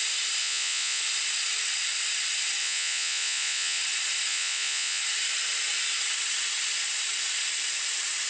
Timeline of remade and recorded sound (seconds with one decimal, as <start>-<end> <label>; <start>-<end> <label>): 0.0-0.4 recorded; 0.4-1.0 remade; 1.0-2.6 recorded; 2.6-3.8 remade; 3.8-4.3 recorded; 4.3-5.0 remade; 5.0-8.3 recorded